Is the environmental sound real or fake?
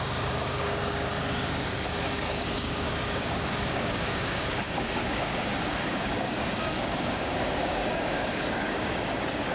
fake